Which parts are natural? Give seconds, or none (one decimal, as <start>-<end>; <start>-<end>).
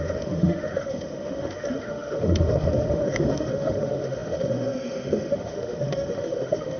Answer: none